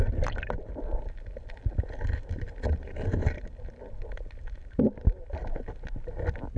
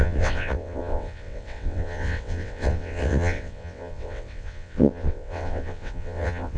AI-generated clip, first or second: second